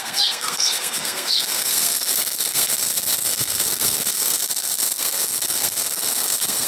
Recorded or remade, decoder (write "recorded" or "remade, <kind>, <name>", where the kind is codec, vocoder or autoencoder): remade, codec, SNAC